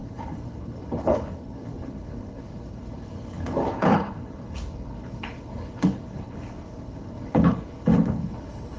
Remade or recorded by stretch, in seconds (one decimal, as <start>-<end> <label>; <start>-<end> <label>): 0.0-8.8 remade